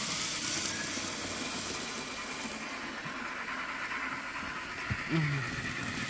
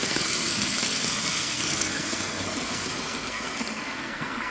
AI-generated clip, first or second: second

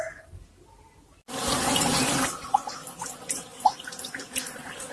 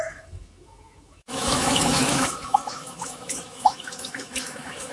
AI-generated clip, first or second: second